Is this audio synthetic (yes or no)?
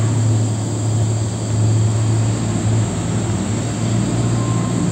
no